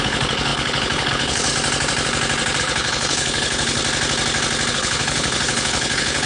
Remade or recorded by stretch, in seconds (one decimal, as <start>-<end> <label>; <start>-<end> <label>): 0.0-1.5 remade; 1.5-2.6 recorded; 2.6-3.8 remade; 3.8-4.7 recorded; 4.7-6.3 remade